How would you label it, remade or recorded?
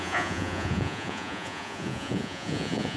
remade